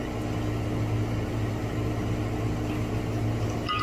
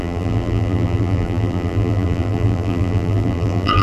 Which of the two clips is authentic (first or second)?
first